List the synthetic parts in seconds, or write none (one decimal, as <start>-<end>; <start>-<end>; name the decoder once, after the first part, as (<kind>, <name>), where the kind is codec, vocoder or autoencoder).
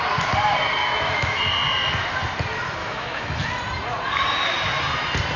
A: 0.8-1.4 (autoencoder, DAC-VAE); 2.8-3.4